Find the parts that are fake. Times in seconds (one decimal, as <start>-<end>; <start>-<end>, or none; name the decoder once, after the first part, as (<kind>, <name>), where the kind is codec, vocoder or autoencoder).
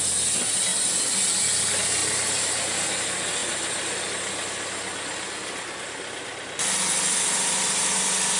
2.0-2.9 (vocoder, BigVGAN v2)